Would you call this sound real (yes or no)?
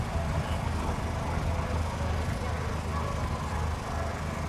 yes